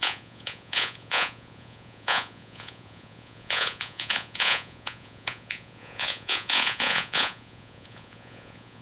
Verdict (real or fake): fake